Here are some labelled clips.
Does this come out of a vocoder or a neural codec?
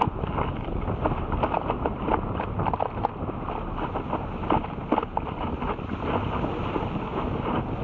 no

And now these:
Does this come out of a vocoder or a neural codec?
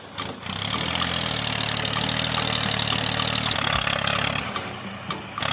no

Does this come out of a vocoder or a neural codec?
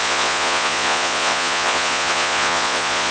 yes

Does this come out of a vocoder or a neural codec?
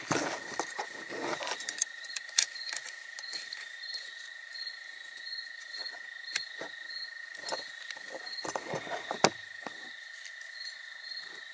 no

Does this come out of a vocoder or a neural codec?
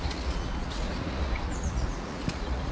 yes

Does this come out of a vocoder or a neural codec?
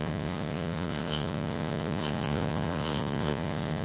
yes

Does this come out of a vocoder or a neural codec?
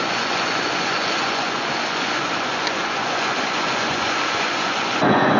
yes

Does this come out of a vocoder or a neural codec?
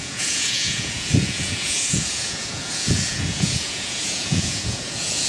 yes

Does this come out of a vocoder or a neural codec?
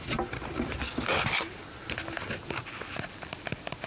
no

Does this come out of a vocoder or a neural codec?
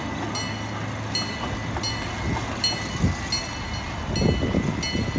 no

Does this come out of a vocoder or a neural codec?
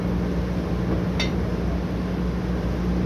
no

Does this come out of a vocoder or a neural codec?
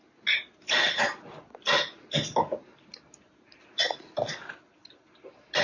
no